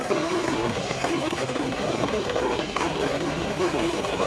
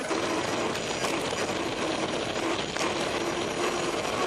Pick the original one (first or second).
second